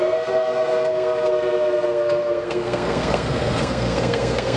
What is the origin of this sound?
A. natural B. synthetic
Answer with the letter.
B